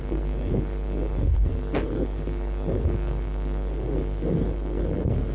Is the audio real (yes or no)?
no